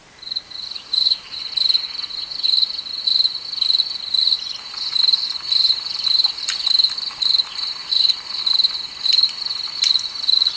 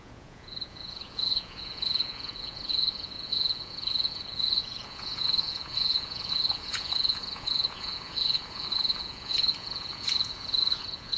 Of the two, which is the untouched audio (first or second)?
first